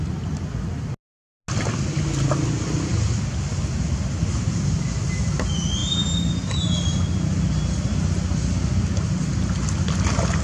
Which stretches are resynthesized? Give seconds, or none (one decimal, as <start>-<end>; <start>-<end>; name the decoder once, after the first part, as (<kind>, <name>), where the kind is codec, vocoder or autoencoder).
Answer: none